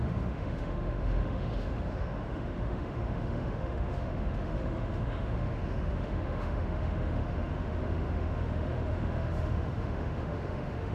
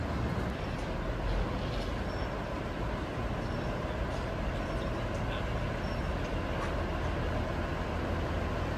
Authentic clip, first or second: second